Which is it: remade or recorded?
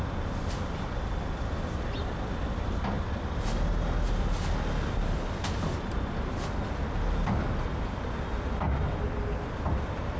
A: recorded